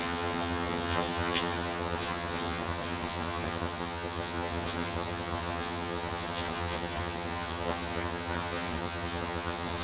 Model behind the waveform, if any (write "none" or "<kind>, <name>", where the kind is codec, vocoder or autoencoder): vocoder, HiFi-GAN